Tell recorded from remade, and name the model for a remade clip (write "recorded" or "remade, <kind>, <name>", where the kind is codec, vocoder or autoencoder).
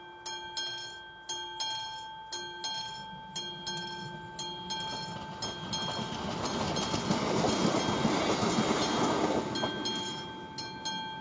recorded